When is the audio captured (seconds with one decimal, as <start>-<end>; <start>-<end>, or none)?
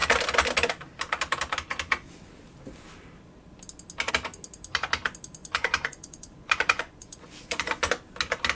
0.0-5.4; 7.9-8.5